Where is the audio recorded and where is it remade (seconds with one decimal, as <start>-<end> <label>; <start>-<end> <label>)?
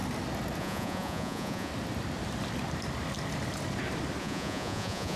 0.0-0.6 recorded; 0.6-1.7 remade; 1.7-4.2 recorded; 4.2-5.2 remade